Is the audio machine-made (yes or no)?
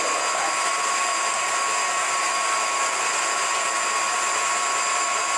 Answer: no